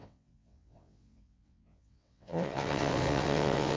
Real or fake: fake